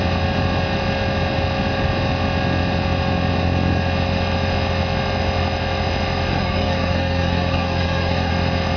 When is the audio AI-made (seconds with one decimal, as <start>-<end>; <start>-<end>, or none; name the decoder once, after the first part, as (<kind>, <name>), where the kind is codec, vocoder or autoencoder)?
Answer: 6.3-8.3 (codec, SNAC)